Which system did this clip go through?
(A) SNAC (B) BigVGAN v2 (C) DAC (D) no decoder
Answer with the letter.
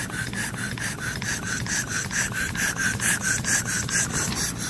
D